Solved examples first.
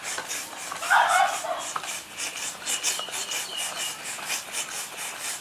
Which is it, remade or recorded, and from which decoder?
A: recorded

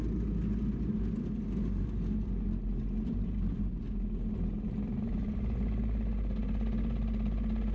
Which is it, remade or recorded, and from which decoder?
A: recorded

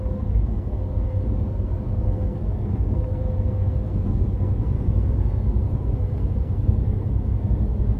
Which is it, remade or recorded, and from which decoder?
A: remade, codec, SNAC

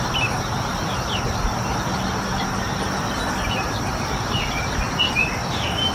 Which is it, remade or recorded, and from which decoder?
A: recorded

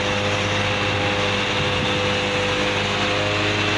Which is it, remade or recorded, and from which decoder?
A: recorded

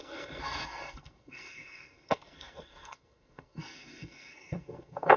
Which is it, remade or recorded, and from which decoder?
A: remade, codec, SNAC